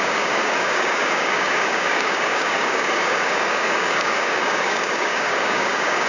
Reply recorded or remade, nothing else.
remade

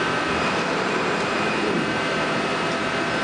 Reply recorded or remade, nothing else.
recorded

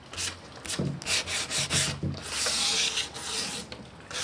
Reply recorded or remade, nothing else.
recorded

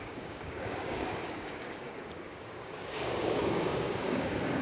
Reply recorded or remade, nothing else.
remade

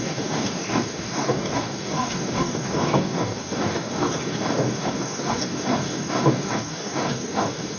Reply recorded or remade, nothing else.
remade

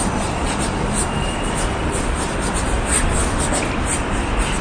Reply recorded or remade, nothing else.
recorded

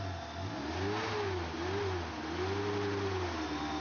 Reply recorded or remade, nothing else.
recorded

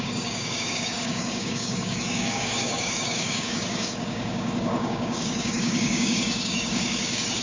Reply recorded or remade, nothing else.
remade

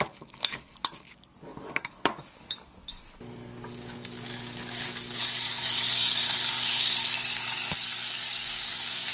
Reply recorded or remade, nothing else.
remade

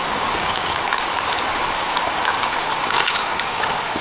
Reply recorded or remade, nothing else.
remade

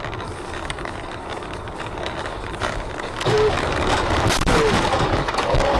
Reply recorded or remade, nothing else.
remade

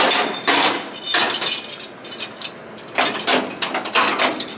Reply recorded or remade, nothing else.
recorded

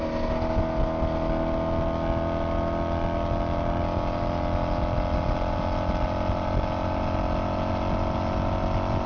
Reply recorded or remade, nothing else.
recorded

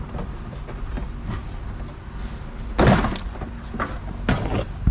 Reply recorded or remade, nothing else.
recorded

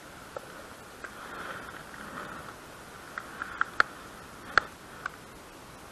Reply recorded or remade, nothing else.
recorded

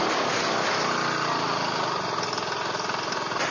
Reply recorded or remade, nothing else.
recorded